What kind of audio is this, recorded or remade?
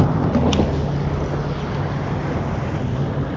recorded